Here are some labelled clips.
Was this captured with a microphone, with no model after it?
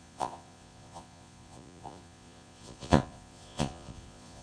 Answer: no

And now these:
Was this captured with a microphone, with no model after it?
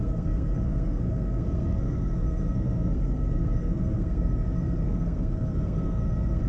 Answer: no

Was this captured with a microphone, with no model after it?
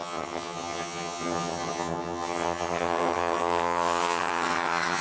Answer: no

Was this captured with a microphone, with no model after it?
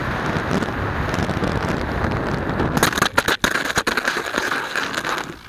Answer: yes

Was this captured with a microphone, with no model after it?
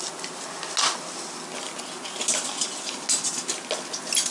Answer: yes